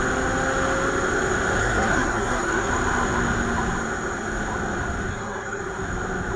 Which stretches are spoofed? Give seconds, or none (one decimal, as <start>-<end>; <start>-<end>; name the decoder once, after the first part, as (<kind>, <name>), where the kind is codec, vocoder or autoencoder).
1.6-2.7 (codec, SNAC); 5.1-5.6